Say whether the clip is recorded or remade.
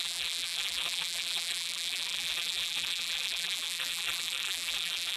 remade